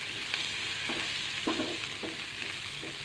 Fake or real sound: real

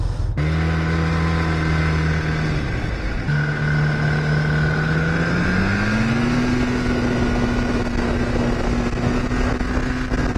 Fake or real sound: real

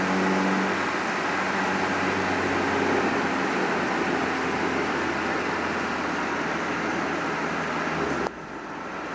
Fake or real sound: real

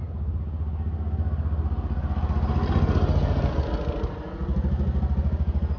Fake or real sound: real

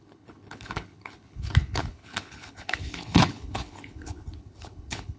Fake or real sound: fake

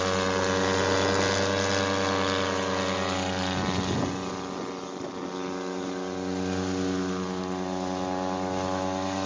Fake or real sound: real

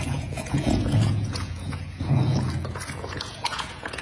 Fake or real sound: fake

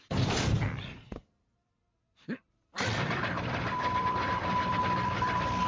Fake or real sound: fake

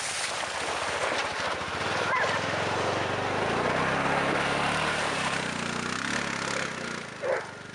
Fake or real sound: real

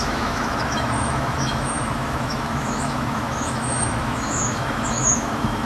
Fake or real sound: fake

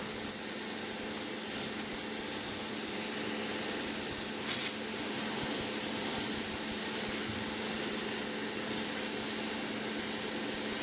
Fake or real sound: real